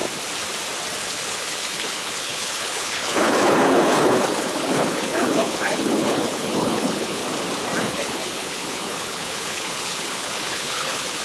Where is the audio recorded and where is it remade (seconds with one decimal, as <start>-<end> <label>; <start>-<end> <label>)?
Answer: 0.0-1.0 recorded; 1.0-7.2 remade; 7.2-7.8 recorded; 7.8-11.2 remade